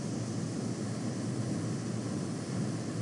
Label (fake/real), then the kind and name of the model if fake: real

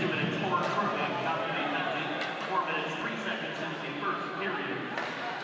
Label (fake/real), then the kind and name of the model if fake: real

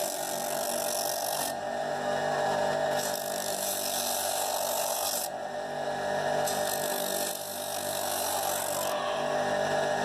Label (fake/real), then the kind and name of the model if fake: real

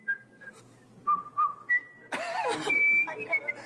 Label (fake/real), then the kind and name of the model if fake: real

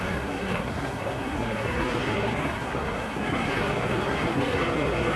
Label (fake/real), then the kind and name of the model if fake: fake, codec, SNAC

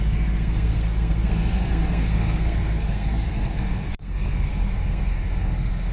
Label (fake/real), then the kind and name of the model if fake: fake, codec, SNAC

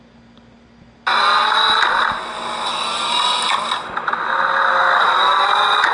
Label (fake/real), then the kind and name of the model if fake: real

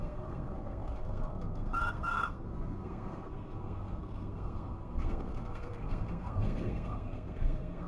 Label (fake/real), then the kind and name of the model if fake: fake, codec, SNAC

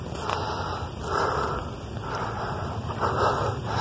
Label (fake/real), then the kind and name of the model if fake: real